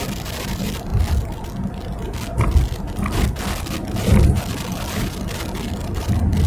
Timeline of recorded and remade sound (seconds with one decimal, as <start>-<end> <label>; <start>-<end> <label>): 0.0-0.9 remade; 0.9-4.4 recorded; 4.4-6.5 remade